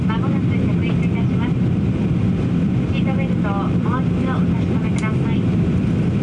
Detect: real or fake real